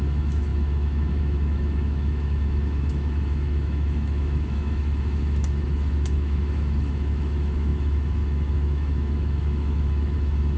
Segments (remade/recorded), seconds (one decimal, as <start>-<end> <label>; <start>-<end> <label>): 0.0-10.6 remade